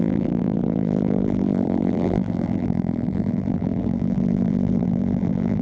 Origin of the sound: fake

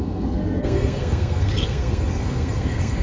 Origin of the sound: fake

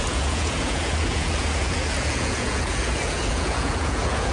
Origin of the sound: fake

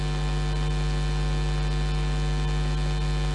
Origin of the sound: real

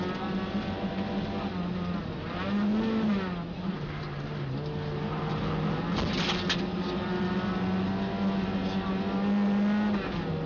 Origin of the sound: real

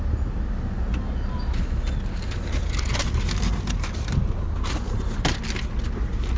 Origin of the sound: real